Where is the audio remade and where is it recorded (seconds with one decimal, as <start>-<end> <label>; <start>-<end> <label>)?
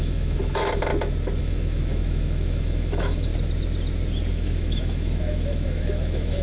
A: 0.0-0.9 remade; 0.9-1.4 recorded; 1.4-3.3 remade; 3.3-4.3 recorded; 4.3-6.4 remade